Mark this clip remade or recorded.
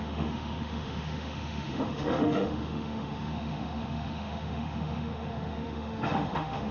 remade